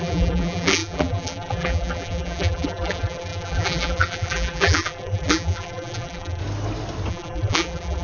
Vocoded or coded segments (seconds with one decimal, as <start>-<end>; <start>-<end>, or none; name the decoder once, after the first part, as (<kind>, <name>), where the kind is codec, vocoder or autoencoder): 0.0-6.4 (vocoder, BigVGAN v2); 7.1-8.0